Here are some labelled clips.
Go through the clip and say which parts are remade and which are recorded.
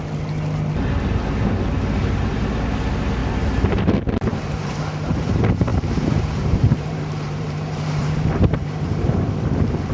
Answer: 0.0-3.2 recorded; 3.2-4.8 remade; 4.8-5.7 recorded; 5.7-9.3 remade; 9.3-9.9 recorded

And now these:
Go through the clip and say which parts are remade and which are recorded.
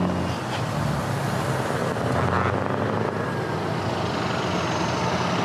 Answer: 0.0-5.4 recorded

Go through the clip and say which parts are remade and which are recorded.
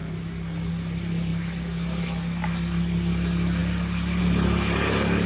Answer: 0.0-5.3 recorded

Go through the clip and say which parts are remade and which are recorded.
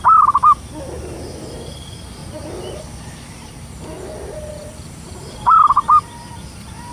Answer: 0.0-2.2 recorded; 2.2-2.8 remade; 2.8-6.9 recorded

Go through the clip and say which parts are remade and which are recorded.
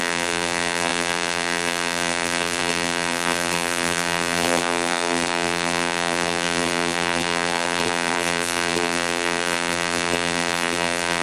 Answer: 0.0-11.2 remade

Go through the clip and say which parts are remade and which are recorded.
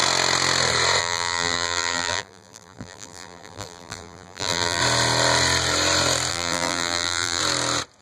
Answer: 0.0-1.0 recorded; 1.0-4.8 remade; 4.8-6.3 recorded; 6.3-7.4 remade; 7.4-8.0 recorded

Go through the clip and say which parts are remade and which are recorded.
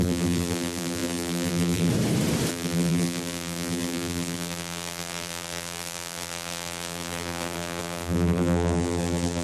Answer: 0.0-1.9 remade; 1.9-2.5 recorded; 2.5-9.4 remade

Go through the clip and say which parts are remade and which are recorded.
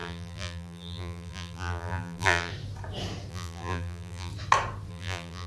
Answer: 0.0-2.5 remade; 2.5-3.3 recorded; 3.3-4.3 remade; 4.3-4.9 recorded; 4.9-5.5 remade